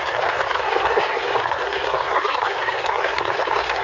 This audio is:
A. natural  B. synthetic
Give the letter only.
B